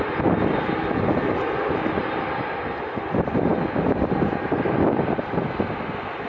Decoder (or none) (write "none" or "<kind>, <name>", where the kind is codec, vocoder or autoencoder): none